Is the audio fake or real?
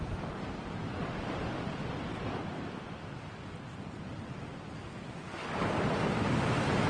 real